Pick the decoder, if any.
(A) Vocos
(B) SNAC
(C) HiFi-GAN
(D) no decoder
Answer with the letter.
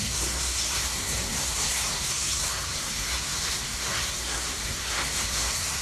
B